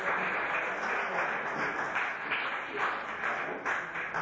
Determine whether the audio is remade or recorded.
recorded